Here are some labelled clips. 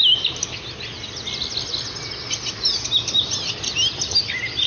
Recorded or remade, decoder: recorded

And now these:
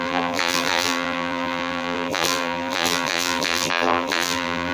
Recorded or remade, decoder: remade, vocoder, BigVGAN v2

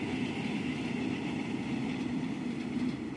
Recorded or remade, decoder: recorded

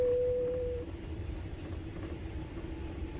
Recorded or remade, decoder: remade, vocoder, BigVGAN v2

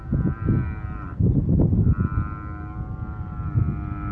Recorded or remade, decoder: recorded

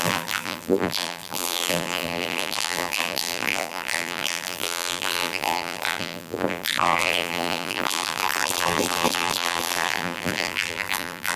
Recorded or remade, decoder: remade, vocoder, BigVGAN v2